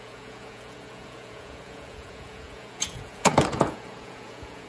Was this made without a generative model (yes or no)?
no